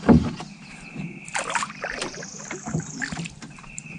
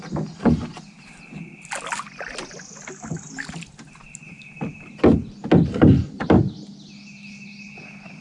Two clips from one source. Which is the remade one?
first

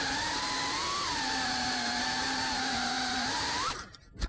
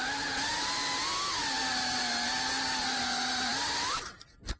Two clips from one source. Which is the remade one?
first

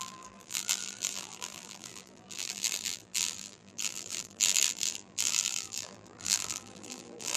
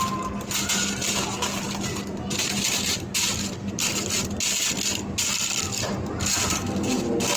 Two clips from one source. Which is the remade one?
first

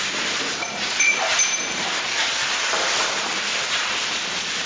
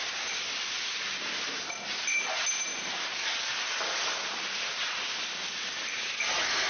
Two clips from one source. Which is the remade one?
first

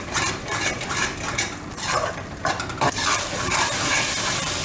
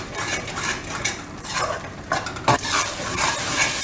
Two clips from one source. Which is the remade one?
first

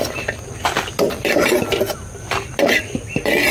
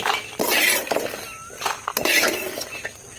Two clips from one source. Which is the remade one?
first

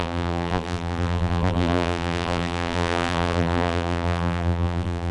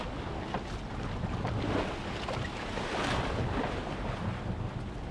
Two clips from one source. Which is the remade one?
first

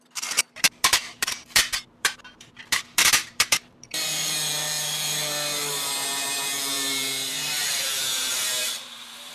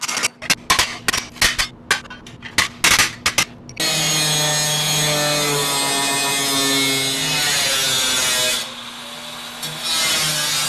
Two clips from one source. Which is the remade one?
first